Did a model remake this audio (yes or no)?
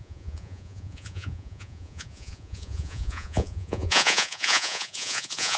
yes